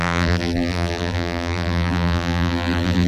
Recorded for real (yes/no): no